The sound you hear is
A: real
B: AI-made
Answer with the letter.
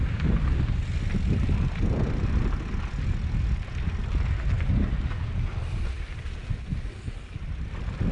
A